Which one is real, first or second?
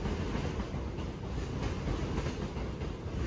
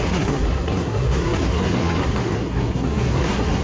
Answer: first